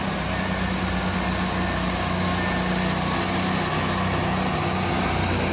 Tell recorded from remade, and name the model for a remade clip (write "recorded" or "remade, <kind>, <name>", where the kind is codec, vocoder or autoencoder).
recorded